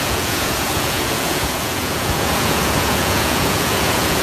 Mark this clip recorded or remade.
remade